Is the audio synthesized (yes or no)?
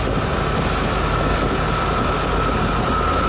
no